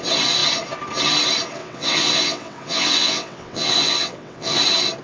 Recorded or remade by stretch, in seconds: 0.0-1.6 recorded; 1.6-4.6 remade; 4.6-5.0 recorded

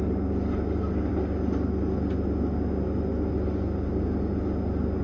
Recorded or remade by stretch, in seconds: 0.0-5.0 recorded

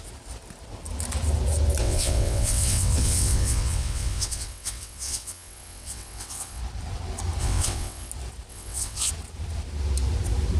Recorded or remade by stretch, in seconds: 0.0-1.8 recorded; 1.8-6.6 remade; 6.6-7.4 recorded; 7.4-8.1 remade; 8.1-8.5 recorded; 8.5-9.1 remade; 9.1-10.6 recorded

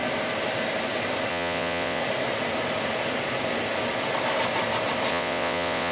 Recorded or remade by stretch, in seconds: 0.0-1.3 recorded; 1.3-2.0 remade; 2.0-5.1 recorded; 5.1-5.9 remade

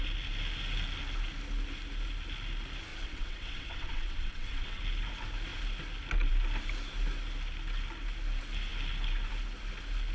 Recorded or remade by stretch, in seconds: 0.0-2.9 recorded; 2.9-4.8 remade; 4.8-10.1 recorded

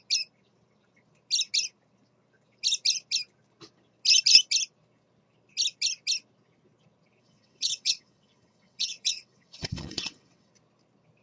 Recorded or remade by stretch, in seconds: 0.0-7.2 recorded; 7.2-10.5 remade; 10.5-11.2 recorded